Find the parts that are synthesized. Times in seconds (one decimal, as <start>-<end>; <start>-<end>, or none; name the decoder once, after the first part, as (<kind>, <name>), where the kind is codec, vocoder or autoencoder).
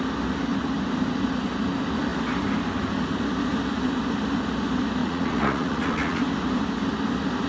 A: 5.0-6.2 (vocoder, Vocos)